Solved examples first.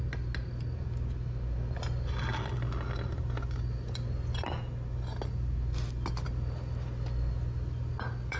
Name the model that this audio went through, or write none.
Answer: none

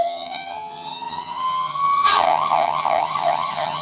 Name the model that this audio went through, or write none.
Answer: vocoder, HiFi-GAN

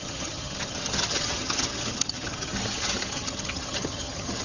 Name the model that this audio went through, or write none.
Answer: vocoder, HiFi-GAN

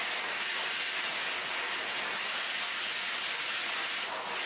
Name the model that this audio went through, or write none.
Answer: none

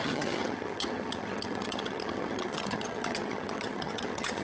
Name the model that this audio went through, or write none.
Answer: vocoder, HiFi-GAN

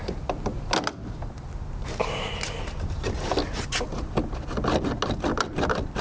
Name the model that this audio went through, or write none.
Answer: none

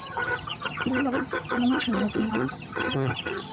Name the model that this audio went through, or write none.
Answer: vocoder, HiFi-GAN